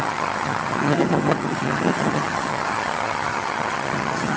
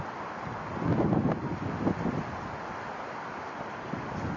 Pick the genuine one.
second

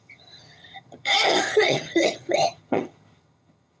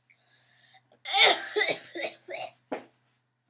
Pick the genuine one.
second